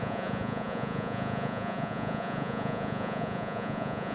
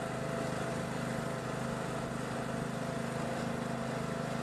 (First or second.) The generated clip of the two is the first